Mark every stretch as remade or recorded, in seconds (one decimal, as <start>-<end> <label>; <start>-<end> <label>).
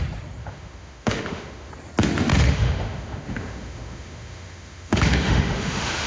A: 0.0-0.4 recorded; 0.4-1.7 remade; 1.7-2.3 recorded; 2.3-6.1 remade